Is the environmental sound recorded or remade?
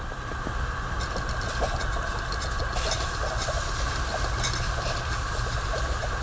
recorded